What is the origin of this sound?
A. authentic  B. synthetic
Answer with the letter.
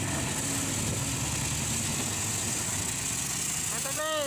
A